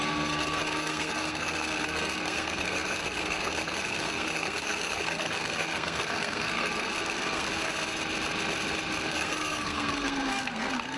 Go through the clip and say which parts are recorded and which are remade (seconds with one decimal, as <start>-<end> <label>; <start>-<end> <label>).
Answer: 0.0-7.5 remade; 7.5-9.1 recorded; 9.1-11.0 remade